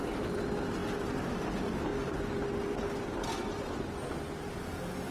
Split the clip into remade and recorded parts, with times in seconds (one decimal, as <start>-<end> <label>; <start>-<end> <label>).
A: 0.0-5.1 recorded